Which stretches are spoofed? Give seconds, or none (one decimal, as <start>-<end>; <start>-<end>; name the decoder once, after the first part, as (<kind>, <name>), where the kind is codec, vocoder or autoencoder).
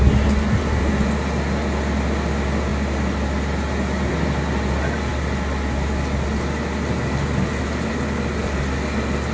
none